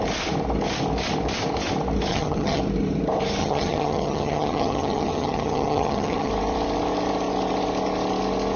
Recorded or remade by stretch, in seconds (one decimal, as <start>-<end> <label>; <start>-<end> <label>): 0.0-2.1 recorded; 2.1-2.6 remade; 2.6-3.4 recorded; 3.4-6.3 remade; 6.3-8.6 recorded